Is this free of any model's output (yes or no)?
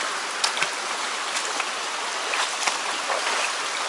no